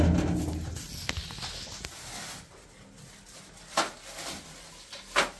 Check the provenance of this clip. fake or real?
real